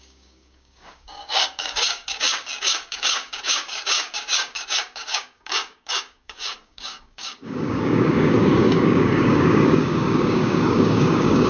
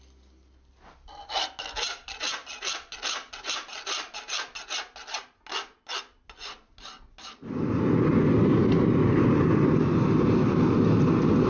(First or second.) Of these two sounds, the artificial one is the first